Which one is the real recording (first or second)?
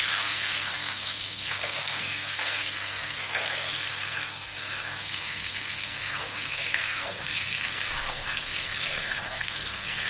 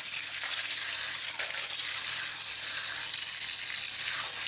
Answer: second